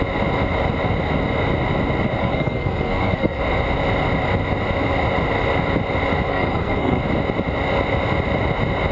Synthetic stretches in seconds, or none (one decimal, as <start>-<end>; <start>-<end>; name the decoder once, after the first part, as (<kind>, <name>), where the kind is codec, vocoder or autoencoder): 2.2-3.4 (codec, SNAC); 6.3-7.0